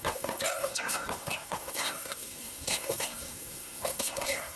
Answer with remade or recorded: remade